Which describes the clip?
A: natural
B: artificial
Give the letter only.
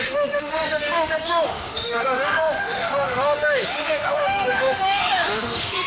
B